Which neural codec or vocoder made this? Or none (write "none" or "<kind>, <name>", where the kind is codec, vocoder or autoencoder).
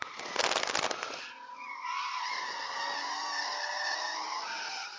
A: none